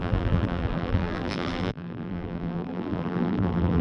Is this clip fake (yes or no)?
yes